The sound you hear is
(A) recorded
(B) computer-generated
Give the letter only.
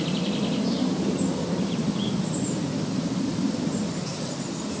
B